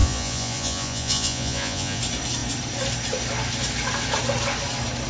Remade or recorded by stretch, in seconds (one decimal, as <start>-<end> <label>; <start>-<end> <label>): 0.0-2.0 remade; 2.0-5.1 recorded